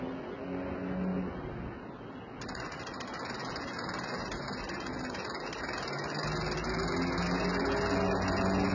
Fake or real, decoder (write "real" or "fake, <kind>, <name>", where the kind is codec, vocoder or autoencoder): real